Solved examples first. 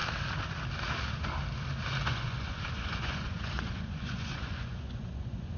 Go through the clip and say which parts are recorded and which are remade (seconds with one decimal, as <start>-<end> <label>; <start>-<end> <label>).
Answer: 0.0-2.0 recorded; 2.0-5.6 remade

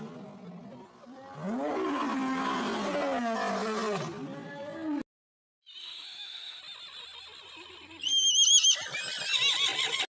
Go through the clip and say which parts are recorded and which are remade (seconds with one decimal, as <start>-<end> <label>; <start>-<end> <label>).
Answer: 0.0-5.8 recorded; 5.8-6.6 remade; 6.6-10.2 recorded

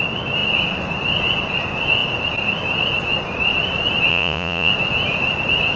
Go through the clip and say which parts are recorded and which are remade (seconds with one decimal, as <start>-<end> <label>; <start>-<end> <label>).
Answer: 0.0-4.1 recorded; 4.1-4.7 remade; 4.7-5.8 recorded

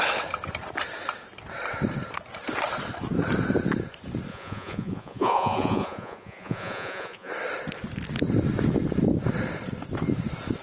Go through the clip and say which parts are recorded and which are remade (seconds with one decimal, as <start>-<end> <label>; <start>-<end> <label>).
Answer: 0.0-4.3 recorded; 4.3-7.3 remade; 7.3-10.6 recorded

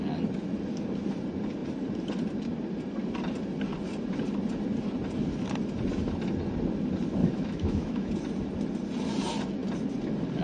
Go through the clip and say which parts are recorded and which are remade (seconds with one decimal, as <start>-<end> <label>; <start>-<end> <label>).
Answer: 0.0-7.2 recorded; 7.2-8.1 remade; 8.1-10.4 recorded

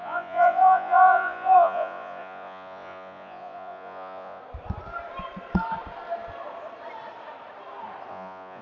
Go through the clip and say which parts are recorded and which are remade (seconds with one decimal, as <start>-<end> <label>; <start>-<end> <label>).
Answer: 0.0-4.4 remade; 4.4-8.1 recorded; 8.1-8.6 remade